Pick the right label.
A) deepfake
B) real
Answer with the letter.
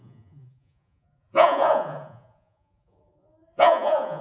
A